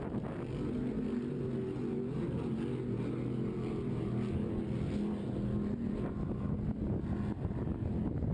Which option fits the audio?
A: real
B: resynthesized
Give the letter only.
A